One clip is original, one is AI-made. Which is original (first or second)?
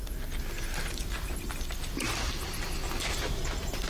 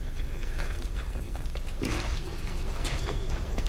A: first